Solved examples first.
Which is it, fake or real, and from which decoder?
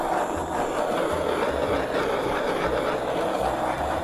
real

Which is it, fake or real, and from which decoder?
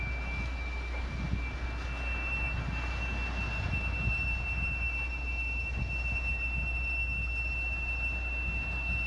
real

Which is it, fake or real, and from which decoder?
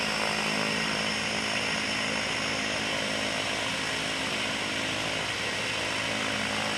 real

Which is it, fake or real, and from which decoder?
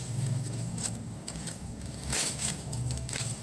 fake, codec, DAC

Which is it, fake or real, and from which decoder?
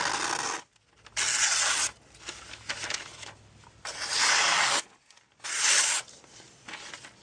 real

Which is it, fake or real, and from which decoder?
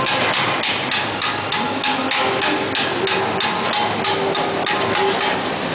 real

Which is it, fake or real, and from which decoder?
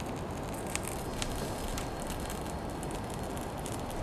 real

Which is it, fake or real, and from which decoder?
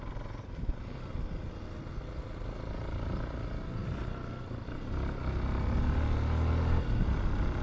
real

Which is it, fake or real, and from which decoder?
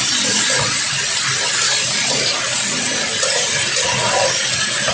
real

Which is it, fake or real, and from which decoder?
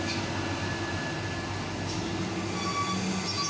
real